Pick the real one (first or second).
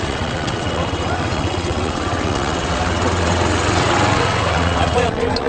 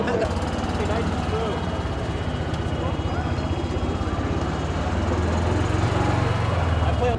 second